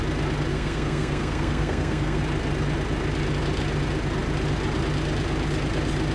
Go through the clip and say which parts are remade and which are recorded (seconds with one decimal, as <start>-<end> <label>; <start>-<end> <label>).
0.0-0.5 recorded; 0.5-2.2 remade; 2.2-6.1 recorded